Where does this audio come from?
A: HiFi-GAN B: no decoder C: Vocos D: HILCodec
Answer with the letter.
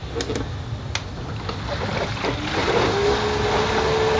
B